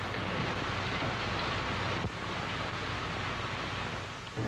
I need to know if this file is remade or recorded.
recorded